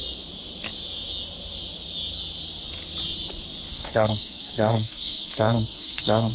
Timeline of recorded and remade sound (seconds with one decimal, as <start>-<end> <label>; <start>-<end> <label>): 0.0-3.7 recorded; 3.7-6.3 remade